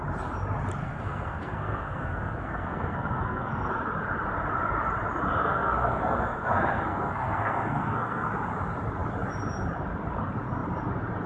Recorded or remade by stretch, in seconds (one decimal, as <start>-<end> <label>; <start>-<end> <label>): 0.0-0.8 recorded; 0.8-3.7 remade; 3.7-5.4 recorded; 5.4-8.3 remade; 8.3-11.3 recorded